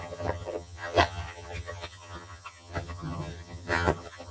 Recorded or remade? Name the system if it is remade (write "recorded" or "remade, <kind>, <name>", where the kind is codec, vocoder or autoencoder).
remade, vocoder, HiFi-GAN